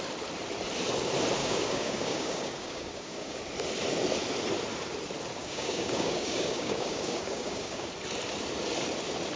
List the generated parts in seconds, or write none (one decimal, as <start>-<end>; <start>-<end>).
1.4-3.4; 5.4-7.9